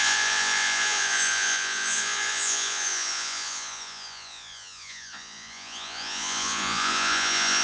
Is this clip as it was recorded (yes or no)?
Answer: no